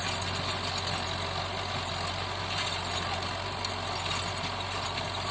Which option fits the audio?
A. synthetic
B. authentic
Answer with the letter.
B